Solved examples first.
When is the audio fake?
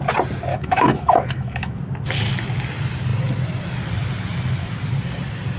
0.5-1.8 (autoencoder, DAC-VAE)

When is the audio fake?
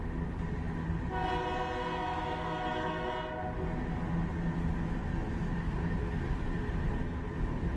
2.1-3.1 (autoencoder, DAC-VAE)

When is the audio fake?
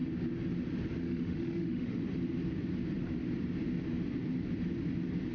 1.0-2.0 (autoencoder, DAC-VAE)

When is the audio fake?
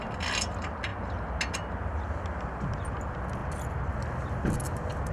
none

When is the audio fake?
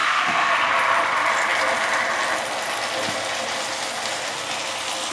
0.0-0.5 (autoencoder, DAC-VAE)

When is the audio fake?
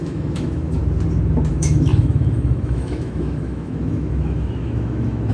0.0-0.8 (autoencoder, DAC-VAE); 1.5-5.3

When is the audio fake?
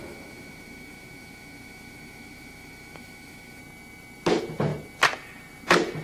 0.0-3.6 (autoencoder, DAC-VAE)